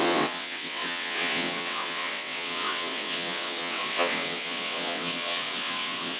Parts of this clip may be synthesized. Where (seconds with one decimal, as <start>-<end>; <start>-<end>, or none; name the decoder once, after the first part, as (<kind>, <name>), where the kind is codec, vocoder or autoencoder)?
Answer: 0.0-6.2 (vocoder, WaveNeXt)

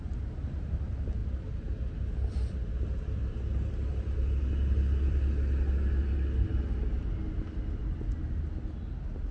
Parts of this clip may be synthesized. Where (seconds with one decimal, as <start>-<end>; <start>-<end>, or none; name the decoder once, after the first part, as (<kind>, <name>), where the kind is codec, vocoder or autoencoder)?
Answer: none

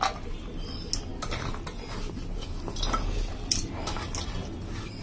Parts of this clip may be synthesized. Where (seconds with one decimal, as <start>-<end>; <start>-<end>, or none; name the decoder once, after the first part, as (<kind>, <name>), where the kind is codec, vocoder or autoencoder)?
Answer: none

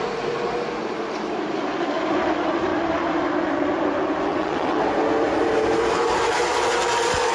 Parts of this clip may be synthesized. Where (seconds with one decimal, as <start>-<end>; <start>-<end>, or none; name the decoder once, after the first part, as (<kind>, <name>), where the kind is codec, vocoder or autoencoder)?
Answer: 4.3-4.8 (vocoder, WaveNeXt)

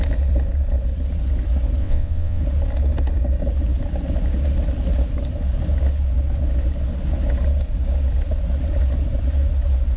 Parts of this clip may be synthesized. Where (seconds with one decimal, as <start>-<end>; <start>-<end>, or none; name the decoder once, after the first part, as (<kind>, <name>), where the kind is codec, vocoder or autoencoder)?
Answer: 1.8-2.4 (vocoder, WaveNeXt)

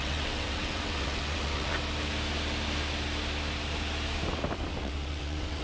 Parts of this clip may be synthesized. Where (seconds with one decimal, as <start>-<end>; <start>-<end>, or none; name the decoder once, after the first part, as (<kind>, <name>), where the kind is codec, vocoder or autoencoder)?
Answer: 0.0-1.7 (vocoder, WaveNeXt); 4.8-5.6

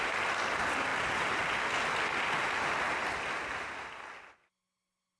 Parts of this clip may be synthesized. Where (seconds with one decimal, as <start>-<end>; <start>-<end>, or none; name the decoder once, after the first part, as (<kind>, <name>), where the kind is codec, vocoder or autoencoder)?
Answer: none

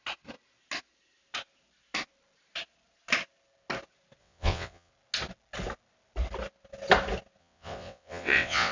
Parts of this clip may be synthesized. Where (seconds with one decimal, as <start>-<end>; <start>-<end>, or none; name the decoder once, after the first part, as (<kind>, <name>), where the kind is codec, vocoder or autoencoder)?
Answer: 4.2-4.9 (vocoder, WaveNeXt); 7.4-8.7